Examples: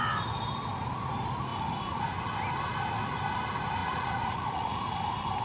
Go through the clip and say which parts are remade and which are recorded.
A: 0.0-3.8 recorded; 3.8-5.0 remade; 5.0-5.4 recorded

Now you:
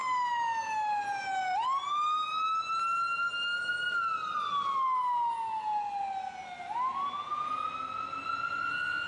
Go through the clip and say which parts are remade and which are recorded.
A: 0.0-9.1 recorded